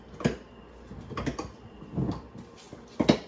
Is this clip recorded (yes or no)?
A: yes